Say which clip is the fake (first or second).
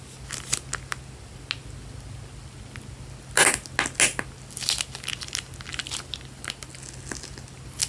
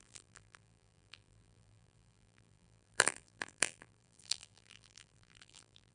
second